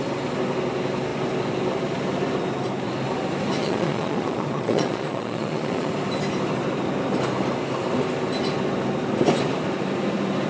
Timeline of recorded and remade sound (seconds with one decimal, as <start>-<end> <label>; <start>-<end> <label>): 0.0-3.6 recorded; 3.6-5.9 remade; 5.9-10.5 recorded